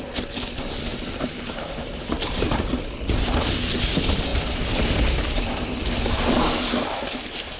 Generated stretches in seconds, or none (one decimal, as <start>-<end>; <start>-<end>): 0.9-2.9